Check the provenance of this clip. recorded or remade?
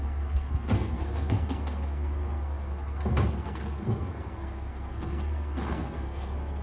remade